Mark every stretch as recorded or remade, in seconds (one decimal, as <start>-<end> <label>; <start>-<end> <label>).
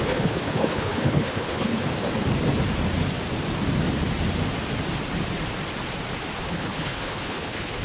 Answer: 0.0-1.7 remade; 1.7-6.4 recorded; 6.4-7.8 remade